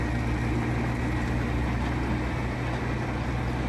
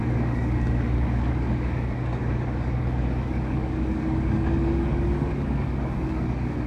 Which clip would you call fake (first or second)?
second